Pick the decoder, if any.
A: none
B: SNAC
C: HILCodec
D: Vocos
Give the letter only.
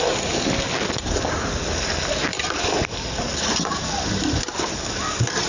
A